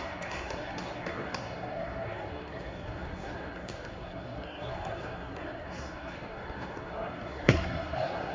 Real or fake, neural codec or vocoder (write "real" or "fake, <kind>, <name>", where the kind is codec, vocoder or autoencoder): fake, codec, SNAC